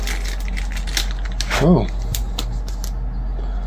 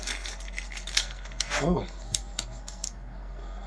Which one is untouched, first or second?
first